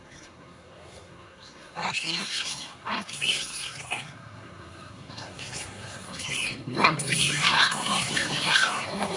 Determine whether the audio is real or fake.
fake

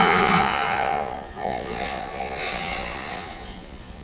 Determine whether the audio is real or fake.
fake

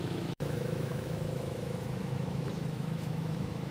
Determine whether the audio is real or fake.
fake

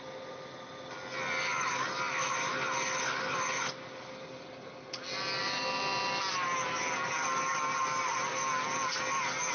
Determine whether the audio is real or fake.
real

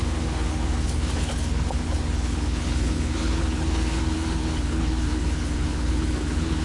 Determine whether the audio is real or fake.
fake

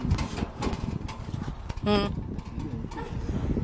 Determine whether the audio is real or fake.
real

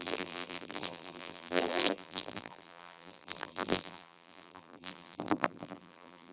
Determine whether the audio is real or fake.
fake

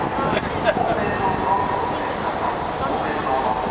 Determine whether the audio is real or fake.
real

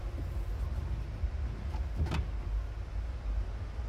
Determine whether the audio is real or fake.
real